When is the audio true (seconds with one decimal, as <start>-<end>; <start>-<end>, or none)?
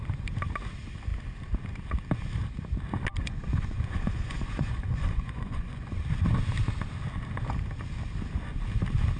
0.0-3.2; 6.0-9.2